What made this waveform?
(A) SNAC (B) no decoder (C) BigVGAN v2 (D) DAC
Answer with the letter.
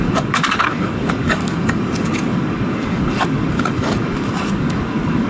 D